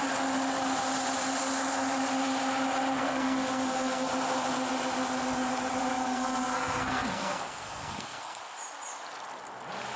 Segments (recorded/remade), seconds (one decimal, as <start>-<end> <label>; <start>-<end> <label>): 0.0-2.9 recorded; 2.9-4.1 remade; 4.1-5.9 recorded; 5.9-8.4 remade; 8.4-10.0 recorded

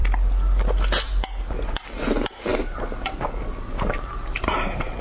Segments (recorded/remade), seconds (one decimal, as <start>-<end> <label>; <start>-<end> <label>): 0.0-5.0 recorded

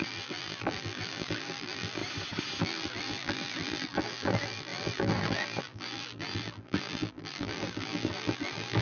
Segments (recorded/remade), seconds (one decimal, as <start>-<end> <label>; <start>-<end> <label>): 0.0-2.0 remade; 2.0-2.6 recorded; 2.6-8.8 remade

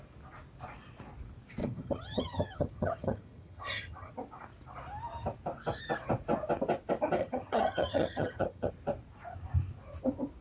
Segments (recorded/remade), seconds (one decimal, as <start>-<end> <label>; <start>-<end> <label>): 0.0-1.6 recorded; 1.6-4.1 remade; 4.1-7.2 recorded; 7.2-8.7 remade; 8.7-10.4 recorded

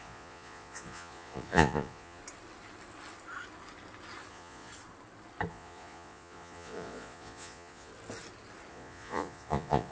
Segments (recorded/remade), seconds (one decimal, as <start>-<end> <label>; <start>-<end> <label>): 0.0-2.2 remade; 2.2-4.3 recorded; 4.3-4.7 remade; 4.7-5.5 recorded; 5.5-7.9 remade; 7.9-8.7 recorded; 8.7-9.9 remade

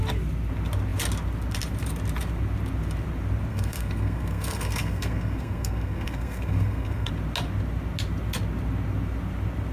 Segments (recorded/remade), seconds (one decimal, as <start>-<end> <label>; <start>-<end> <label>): 0.0-3.5 recorded; 3.5-7.1 remade; 7.1-9.7 recorded